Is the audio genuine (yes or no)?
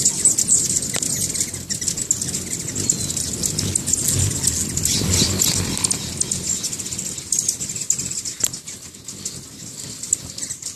yes